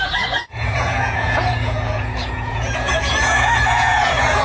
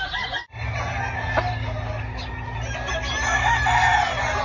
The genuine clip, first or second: second